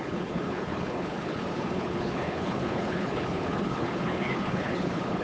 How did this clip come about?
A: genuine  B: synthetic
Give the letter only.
B